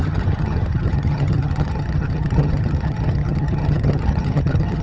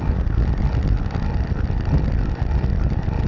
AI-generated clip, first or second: first